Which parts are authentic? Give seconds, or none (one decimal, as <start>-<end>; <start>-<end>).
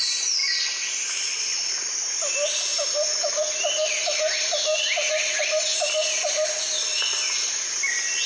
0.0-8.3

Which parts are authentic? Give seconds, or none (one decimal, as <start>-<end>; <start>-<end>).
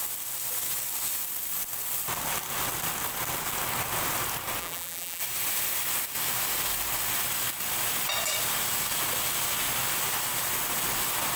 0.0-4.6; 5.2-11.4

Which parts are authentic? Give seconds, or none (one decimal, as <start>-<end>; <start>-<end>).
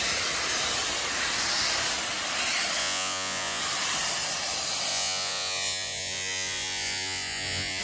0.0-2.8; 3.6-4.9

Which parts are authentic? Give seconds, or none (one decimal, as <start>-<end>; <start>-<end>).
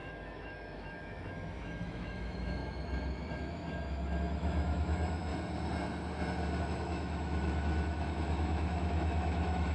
2.6-3.3; 5.3-6.6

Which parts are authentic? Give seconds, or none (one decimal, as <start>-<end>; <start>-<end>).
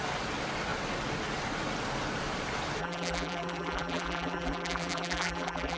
0.0-2.8